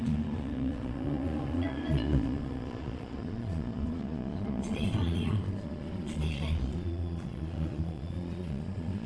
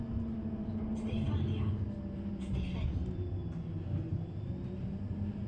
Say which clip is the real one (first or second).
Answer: second